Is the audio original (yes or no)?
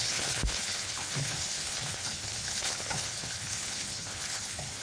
no